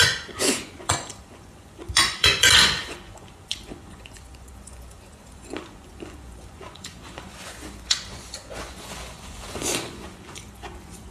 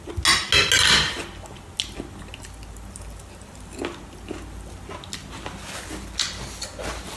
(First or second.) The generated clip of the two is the first